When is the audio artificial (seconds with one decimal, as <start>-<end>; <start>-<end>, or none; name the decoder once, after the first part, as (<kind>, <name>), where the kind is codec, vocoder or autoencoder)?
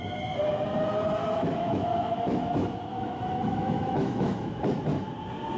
1.2-4.6 (autoencoder, DAC-VAE)